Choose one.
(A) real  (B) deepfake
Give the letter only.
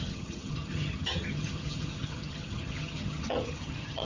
B